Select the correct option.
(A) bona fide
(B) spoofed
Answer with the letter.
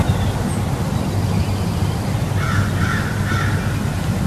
A